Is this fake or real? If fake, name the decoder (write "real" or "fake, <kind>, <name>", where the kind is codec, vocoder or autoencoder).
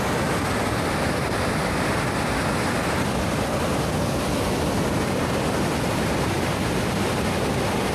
real